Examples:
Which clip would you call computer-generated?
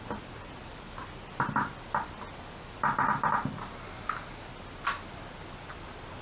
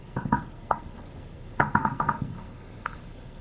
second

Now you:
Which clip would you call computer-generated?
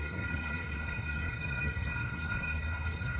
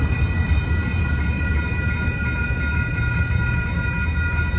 first